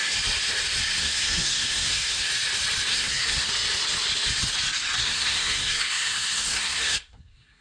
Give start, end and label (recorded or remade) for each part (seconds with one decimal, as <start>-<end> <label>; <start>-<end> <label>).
0.0-1.0 recorded; 1.0-2.3 remade; 2.3-2.9 recorded; 2.9-3.5 remade; 3.5-5.0 recorded; 5.0-7.6 remade